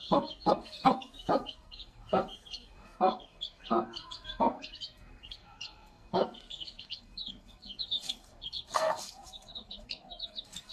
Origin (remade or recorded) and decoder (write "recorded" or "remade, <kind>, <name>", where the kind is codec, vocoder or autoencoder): remade, codec, SNAC